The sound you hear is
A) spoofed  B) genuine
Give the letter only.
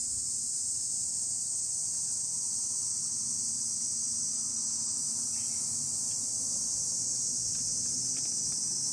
B